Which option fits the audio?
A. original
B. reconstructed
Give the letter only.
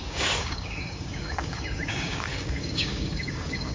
B